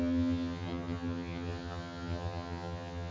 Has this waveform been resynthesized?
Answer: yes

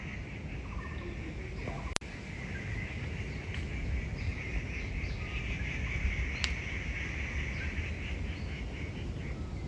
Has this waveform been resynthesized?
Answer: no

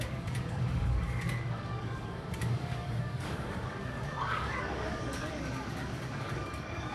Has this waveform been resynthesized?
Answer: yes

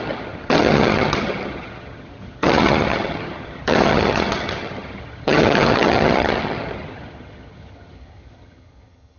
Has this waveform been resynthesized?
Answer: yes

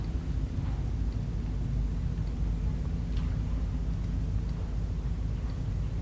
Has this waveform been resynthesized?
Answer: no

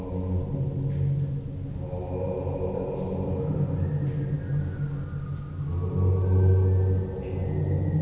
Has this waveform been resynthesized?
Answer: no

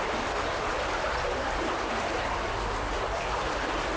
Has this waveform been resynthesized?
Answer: no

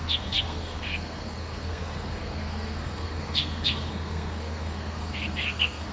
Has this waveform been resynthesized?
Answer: yes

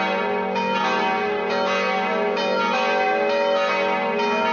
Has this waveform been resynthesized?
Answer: no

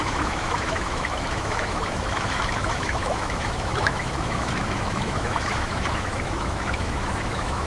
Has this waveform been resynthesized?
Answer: yes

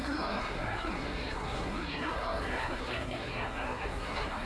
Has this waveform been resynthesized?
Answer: yes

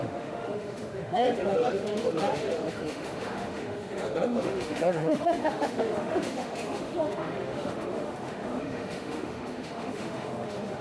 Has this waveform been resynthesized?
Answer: yes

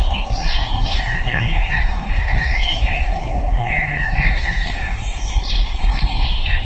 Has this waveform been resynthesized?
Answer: yes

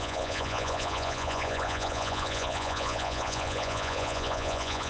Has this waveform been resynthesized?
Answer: yes